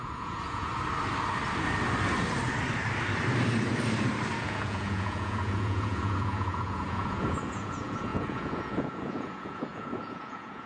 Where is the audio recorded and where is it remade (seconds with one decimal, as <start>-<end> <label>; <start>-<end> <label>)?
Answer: 0.0-0.7 remade; 0.7-4.4 recorded; 4.4-10.7 remade